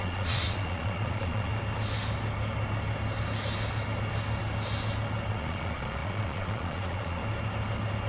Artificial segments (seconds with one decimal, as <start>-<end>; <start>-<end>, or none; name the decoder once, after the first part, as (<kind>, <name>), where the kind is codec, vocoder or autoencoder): 0.0-1.5 (vocoder, Vocos); 5.3-7.2